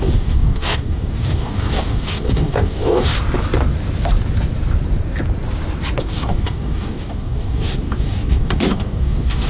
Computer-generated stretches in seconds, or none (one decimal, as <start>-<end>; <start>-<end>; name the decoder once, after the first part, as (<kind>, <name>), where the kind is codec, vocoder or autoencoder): 0.0-3.1 (codec, DAC); 6.0-9.5